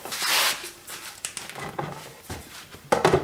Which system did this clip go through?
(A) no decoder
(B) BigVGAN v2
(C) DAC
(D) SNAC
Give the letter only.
A